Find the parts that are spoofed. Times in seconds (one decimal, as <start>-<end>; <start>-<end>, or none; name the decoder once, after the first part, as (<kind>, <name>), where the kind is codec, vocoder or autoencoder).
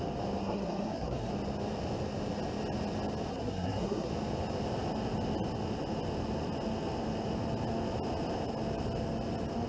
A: 0.4-1.3 (codec, SNAC); 3.3-4.1